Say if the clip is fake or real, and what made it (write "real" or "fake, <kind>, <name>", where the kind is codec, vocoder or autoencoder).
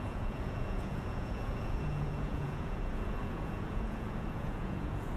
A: fake, vocoder, Vocos